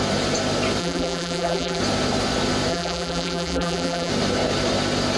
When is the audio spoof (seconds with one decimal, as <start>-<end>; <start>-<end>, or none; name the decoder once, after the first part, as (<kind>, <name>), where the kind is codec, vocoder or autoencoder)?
0.8-1.8 (vocoder, BigVGAN v2); 2.7-4.1